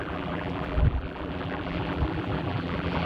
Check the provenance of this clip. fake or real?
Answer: fake